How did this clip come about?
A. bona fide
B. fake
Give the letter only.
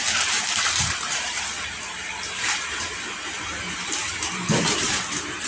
B